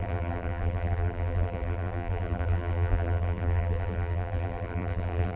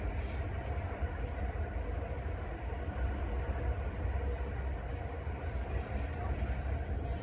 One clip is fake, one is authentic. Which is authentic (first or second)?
second